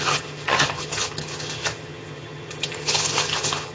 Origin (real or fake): fake